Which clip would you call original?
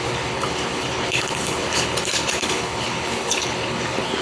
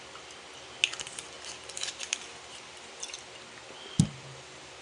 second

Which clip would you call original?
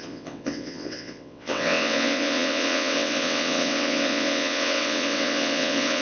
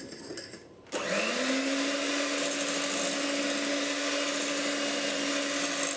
second